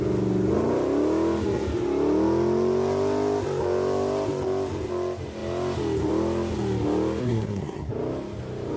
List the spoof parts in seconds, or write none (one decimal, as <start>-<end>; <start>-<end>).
7.2-7.9